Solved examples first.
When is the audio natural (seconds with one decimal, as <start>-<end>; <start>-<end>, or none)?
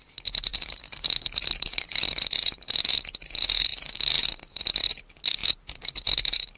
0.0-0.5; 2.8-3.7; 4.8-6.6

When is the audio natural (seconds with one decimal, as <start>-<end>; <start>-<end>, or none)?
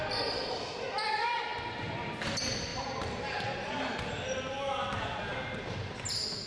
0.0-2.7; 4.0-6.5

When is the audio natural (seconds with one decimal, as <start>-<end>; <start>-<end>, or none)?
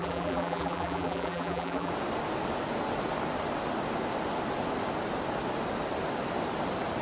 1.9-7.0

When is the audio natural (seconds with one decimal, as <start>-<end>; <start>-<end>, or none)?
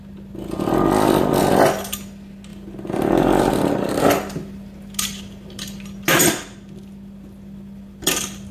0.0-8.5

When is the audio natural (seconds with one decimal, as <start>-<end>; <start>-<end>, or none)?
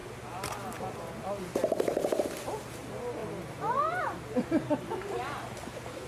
0.0-6.1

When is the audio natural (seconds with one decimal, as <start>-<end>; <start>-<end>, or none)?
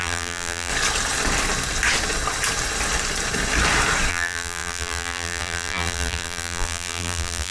0.7-4.1